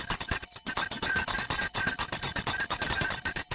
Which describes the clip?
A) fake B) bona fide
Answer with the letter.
B